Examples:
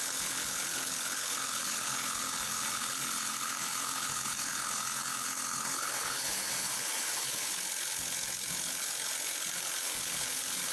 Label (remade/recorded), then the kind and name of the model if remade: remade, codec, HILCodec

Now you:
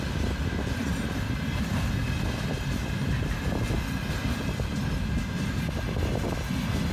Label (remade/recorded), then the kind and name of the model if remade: recorded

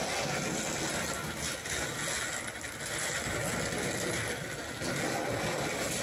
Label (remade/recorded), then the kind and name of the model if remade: recorded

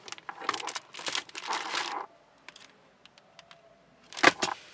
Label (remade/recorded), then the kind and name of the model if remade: recorded